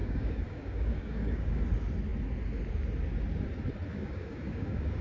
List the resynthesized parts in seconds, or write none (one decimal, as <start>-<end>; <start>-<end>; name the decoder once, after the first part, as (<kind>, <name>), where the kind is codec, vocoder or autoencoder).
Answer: 0.0-1.6 (codec, DAC); 3.9-5.0